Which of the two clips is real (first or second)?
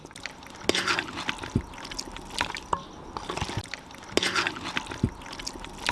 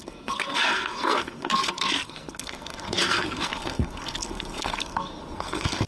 first